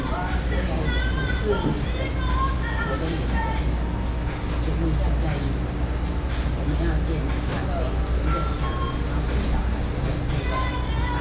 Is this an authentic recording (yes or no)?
yes